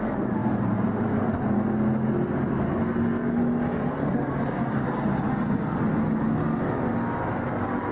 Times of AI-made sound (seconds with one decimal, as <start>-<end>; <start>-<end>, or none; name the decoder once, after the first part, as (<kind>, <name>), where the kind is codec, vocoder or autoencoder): none